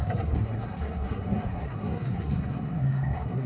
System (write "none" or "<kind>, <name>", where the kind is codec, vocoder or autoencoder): codec, SNAC